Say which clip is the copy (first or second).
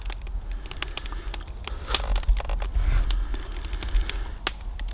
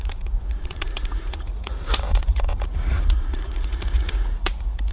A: second